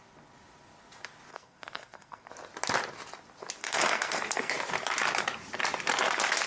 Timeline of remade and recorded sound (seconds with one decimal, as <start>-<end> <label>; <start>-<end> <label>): 0.0-1.3 recorded; 1.3-2.3 remade; 2.3-3.6 recorded; 3.6-4.5 remade; 4.5-6.5 recorded